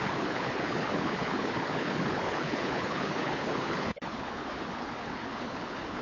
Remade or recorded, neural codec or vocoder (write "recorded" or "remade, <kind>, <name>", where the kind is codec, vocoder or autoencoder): remade, codec, HILCodec